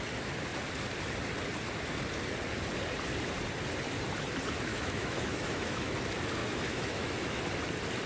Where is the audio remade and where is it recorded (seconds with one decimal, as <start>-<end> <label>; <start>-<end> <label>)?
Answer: 0.0-4.7 recorded; 4.7-5.9 remade; 5.9-6.4 recorded; 6.4-7.4 remade; 7.4-8.1 recorded